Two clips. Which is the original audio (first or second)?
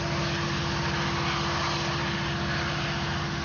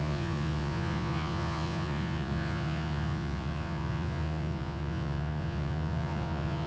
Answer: first